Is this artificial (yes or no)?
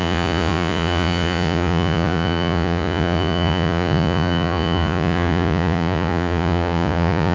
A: yes